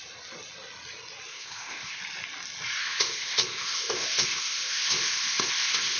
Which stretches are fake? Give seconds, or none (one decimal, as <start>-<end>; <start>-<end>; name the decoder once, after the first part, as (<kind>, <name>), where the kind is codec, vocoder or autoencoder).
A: 1.3-2.0 (codec, ZipCodec); 2.8-6.0